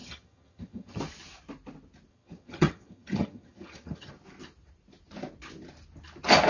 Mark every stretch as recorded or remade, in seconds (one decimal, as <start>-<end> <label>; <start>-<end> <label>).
0.0-1.0 remade; 1.0-2.1 recorded; 2.1-4.1 remade; 4.1-6.5 recorded